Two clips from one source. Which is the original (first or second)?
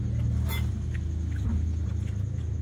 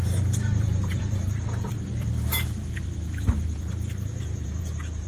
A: first